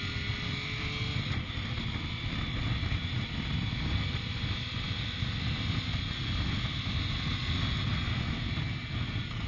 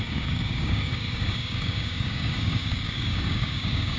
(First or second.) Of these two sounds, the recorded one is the first